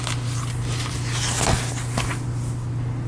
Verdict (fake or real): real